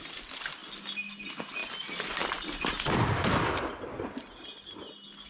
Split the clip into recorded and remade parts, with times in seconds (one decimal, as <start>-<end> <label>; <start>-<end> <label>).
0.0-5.3 recorded